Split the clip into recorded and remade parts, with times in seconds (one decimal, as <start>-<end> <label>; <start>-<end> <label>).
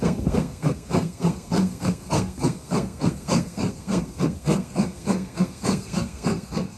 0.0-6.8 remade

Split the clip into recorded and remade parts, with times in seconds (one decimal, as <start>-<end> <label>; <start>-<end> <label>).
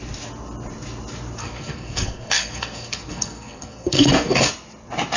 0.0-1.4 recorded; 1.4-4.5 remade; 4.5-5.2 recorded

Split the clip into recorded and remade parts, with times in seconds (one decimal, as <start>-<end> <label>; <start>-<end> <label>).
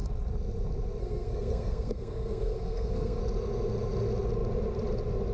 0.0-1.0 recorded; 1.0-3.2 remade; 3.2-5.3 recorded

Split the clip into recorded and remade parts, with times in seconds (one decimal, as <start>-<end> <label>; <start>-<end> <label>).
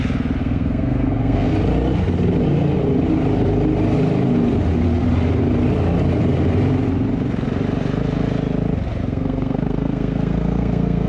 0.0-0.4 recorded; 0.4-1.5 remade; 1.5-9.0 recorded; 9.0-11.1 remade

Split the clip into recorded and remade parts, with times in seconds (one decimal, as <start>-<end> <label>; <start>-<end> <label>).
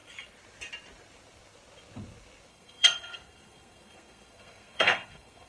0.0-2.5 recorded; 2.5-5.5 remade